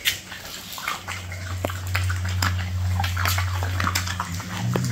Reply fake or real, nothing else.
real